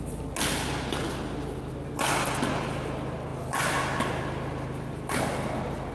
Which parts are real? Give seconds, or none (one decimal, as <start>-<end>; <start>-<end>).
0.0-5.9